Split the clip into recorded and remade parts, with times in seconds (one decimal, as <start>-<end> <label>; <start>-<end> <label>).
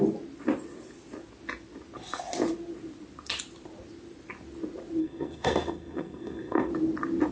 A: 0.0-5.0 recorded; 5.0-6.7 remade; 6.7-7.3 recorded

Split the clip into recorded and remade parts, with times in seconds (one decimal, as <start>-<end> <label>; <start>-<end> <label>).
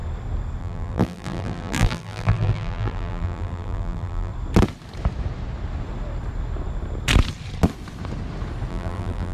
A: 0.0-0.6 recorded; 0.6-4.3 remade; 4.3-8.7 recorded; 8.7-9.3 remade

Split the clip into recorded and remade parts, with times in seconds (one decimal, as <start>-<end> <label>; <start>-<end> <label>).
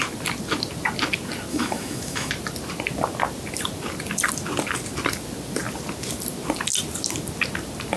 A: 0.0-1.5 recorded; 1.5-2.3 remade; 2.3-8.0 recorded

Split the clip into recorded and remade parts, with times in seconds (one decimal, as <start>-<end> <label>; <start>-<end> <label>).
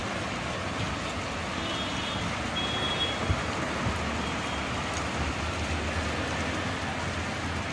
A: 0.0-7.7 recorded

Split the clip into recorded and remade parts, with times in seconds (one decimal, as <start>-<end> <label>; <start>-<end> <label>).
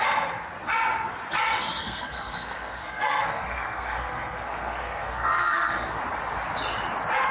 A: 0.0-1.8 recorded; 1.8-6.0 remade; 6.0-7.3 recorded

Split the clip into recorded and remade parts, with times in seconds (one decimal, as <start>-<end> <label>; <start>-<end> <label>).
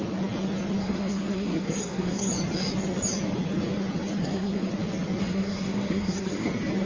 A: 0.0-0.8 recorded; 0.8-2.3 remade; 2.3-4.2 recorded; 4.2-4.7 remade; 4.7-5.2 recorded; 5.2-6.5 remade; 6.5-6.9 recorded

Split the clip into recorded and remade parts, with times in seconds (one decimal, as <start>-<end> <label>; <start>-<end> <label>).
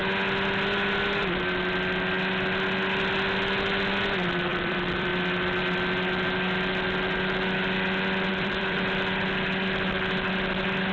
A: 0.0-4.5 recorded; 4.5-5.1 remade; 5.1-8.3 recorded; 8.3-8.8 remade; 8.8-10.9 recorded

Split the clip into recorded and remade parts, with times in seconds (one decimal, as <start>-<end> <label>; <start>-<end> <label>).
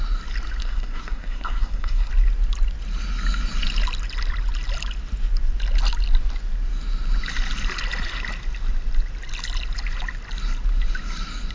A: 0.0-0.6 recorded; 0.6-2.1 remade; 2.1-11.5 recorded